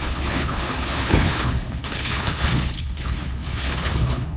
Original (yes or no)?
no